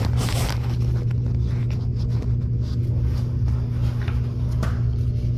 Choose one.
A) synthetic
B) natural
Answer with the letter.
B